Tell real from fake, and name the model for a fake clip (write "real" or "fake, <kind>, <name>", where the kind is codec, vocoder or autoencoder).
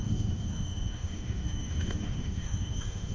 fake, autoencoder, DAC-VAE